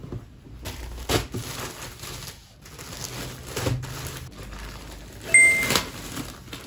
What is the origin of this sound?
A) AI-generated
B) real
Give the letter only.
B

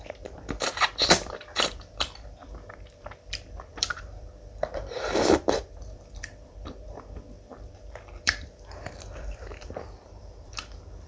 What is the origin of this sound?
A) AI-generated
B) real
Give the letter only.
A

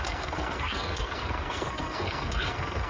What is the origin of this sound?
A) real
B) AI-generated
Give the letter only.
B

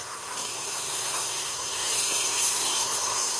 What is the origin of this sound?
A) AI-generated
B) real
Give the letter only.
A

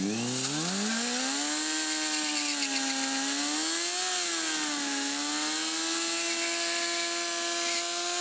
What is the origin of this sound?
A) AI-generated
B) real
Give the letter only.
B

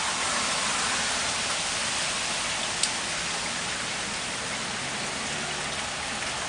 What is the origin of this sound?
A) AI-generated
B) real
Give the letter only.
B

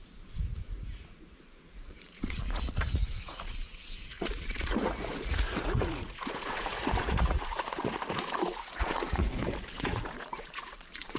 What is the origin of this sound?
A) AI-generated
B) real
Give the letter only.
A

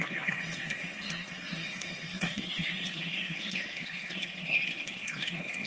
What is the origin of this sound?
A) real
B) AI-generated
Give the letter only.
B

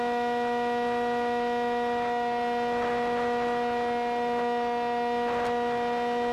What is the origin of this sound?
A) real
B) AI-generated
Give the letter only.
A